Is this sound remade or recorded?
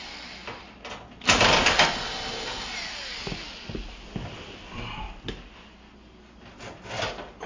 recorded